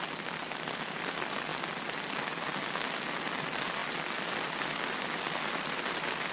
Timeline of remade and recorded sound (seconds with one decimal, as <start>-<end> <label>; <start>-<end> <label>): 0.0-6.3 recorded